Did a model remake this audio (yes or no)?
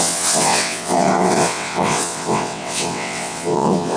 yes